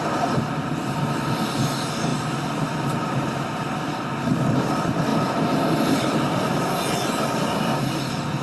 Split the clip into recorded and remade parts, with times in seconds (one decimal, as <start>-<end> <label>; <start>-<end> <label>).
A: 0.0-8.4 recorded